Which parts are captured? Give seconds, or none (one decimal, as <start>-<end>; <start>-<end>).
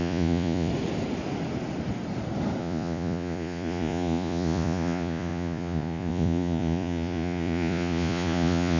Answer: 0.7-2.6